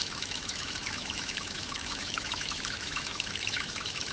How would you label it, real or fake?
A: fake